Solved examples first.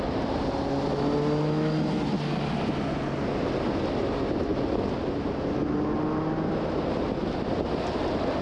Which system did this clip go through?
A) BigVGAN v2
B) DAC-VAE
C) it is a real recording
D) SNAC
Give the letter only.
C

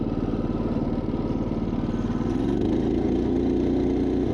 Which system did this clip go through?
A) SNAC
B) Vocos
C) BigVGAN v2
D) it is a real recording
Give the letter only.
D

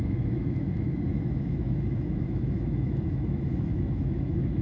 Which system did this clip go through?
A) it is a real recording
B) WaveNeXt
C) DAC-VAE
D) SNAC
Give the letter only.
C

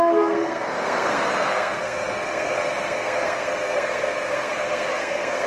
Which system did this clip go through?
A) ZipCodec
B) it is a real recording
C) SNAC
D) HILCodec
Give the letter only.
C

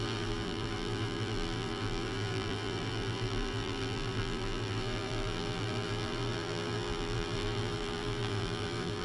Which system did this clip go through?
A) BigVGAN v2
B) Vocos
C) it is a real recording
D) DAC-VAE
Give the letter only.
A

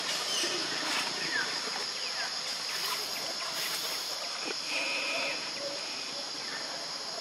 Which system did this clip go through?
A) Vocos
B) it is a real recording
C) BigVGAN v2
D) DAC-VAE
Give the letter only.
B